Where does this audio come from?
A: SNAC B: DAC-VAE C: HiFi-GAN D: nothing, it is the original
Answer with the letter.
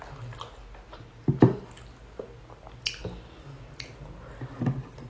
D